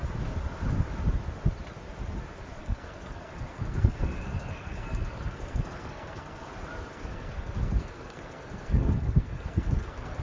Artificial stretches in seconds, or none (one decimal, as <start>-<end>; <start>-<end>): 2.6-6.5; 6.9-10.2